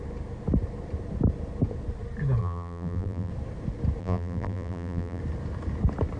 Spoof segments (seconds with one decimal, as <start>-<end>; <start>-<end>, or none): 2.4-3.3; 4.0-5.2